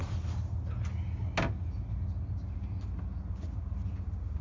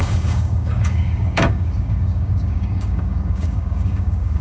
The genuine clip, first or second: first